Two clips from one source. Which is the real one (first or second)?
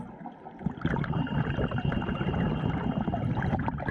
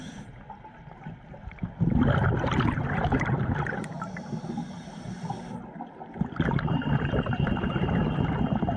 second